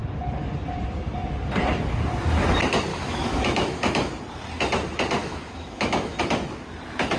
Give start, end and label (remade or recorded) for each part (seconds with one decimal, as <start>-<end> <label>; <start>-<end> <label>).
0.0-2.9 recorded; 2.9-4.1 remade; 4.1-5.2 recorded; 5.2-6.2 remade; 6.2-7.2 recorded